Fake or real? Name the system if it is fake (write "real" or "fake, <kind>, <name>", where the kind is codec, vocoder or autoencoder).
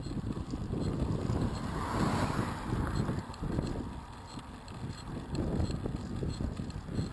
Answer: real